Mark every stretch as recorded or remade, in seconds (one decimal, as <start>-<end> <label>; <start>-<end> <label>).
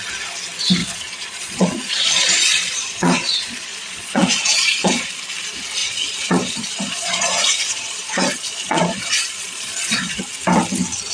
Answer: 0.0-0.8 recorded; 0.8-5.1 remade; 5.1-5.8 recorded; 5.8-10.2 remade; 10.2-11.1 recorded